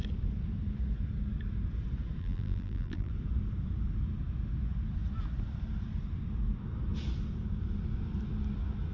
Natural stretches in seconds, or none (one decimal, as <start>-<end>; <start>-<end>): 0.0-2.2; 3.1-8.9